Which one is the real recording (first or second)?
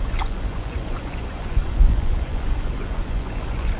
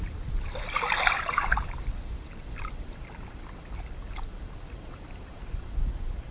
second